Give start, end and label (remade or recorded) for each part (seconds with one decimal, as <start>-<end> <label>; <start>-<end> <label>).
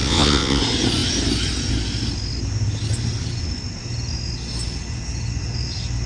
0.0-0.6 remade; 0.6-6.1 recorded